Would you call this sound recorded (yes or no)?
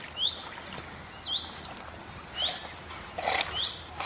yes